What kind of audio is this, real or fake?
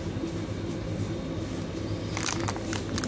real